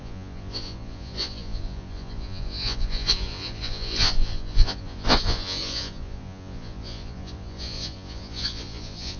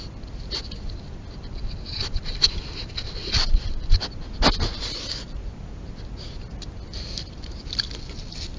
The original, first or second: second